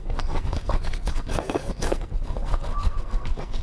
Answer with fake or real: fake